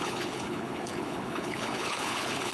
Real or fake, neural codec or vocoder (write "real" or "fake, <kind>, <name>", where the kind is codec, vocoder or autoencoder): fake, codec, HILCodec